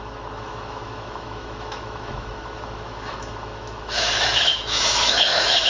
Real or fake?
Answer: fake